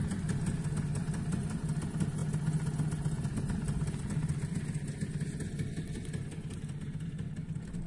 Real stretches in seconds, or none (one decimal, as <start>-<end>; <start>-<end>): 0.0-7.9